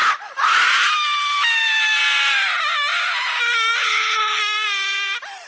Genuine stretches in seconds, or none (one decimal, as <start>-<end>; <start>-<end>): 0.0-3.8; 4.4-5.5